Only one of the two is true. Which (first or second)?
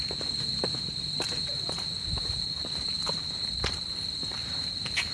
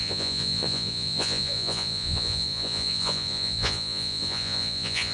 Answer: first